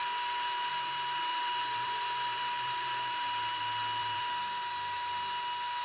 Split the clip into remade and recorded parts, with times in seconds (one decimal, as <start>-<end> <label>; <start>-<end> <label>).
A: 0.0-1.3 recorded; 1.3-3.6 remade; 3.6-4.0 recorded; 4.0-4.7 remade; 4.7-5.8 recorded